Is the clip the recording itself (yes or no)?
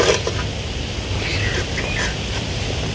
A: yes